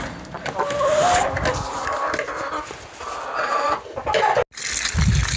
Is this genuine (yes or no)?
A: yes